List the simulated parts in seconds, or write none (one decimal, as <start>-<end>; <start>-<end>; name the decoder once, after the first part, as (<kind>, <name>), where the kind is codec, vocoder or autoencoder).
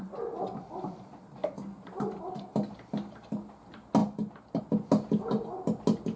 none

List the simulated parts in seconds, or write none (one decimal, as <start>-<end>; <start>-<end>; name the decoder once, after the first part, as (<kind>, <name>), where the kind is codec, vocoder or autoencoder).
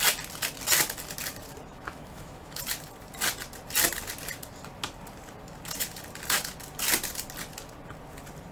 1.7-2.6 (autoencoder, DAC-VAE)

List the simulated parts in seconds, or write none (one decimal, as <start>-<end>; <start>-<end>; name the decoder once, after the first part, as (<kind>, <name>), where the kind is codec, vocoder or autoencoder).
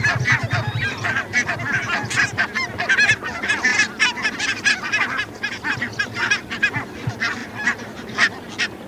0.6-1.7 (vocoder, BigVGAN v2); 3.7-5.6; 7.4-8.5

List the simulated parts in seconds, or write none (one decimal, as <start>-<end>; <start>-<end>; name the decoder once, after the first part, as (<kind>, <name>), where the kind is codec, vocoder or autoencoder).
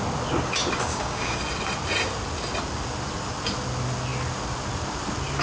0.9-1.4 (codec, DAC)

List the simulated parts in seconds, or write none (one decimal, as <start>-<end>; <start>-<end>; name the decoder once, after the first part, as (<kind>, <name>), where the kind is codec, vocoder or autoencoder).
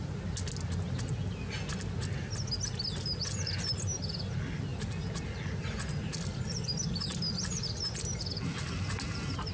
none